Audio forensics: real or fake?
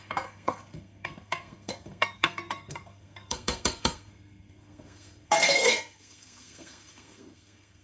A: fake